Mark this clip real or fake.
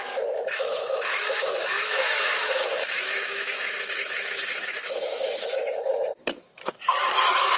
fake